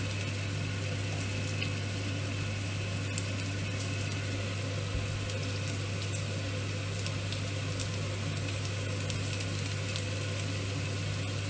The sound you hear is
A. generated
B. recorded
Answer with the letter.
B